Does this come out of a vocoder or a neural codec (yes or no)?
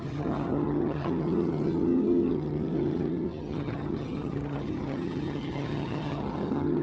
yes